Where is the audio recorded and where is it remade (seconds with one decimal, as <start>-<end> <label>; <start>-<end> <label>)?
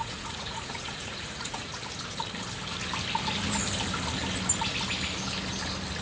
0.0-1.8 remade; 1.8-6.0 recorded